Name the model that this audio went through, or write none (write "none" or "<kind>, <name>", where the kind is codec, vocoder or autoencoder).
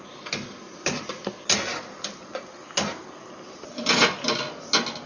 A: none